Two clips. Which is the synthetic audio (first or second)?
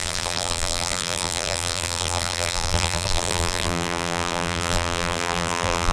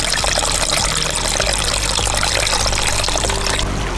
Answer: first